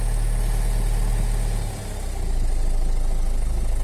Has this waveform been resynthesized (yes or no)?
no